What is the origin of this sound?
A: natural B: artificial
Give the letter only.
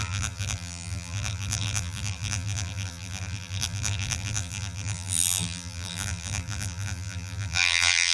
B